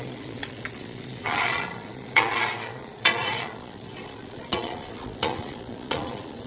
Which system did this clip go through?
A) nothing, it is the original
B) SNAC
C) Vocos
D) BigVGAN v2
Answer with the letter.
C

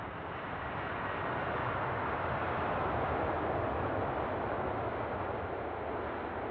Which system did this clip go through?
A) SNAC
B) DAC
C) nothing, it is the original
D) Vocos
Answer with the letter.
C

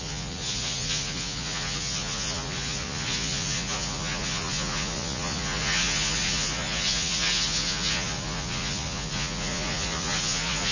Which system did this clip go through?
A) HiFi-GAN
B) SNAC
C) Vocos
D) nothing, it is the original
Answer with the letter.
C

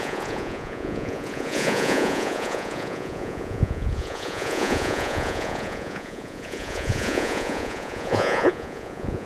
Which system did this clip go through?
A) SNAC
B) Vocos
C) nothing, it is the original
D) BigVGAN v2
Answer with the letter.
B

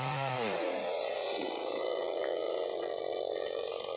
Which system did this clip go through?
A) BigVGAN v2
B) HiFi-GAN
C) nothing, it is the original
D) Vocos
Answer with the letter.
D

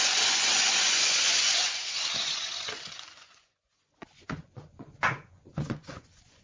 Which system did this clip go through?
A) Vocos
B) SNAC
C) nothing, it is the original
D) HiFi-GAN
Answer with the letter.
A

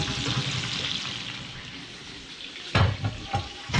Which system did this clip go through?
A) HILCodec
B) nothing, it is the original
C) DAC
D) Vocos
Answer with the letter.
B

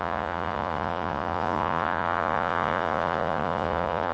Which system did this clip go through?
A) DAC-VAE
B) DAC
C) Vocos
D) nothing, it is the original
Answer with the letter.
C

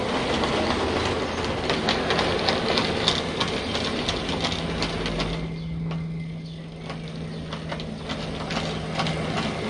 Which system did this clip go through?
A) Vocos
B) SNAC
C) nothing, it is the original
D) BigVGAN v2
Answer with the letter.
C